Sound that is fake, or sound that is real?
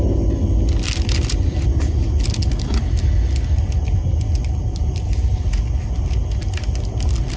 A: real